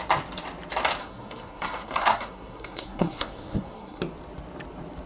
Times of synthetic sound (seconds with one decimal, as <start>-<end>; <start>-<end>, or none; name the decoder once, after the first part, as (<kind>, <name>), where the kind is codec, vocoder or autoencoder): 1.0-4.0 (codec, SNAC)